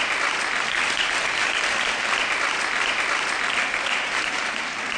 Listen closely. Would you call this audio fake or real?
fake